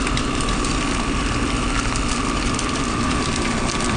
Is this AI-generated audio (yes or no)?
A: no